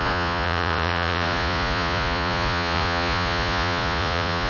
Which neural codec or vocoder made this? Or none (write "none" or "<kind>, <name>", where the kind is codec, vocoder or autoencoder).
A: vocoder, Vocos